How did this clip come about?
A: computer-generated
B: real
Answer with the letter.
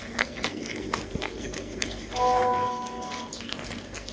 A